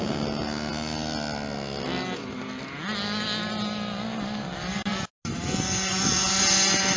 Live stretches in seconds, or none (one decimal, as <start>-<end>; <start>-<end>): 0.0-7.0